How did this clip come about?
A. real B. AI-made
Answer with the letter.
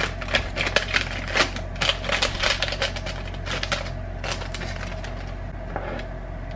A